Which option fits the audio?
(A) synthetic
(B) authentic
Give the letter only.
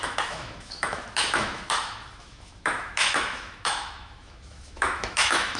A